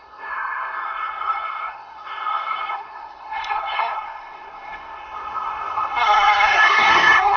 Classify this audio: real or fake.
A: fake